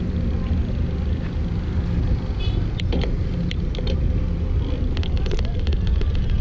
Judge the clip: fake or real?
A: real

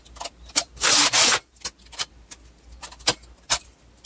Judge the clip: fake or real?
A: real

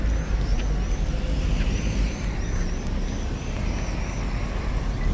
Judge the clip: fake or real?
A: real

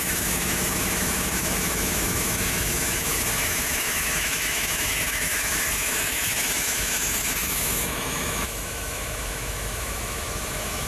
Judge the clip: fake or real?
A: fake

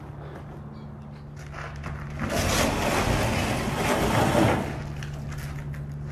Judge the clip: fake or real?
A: real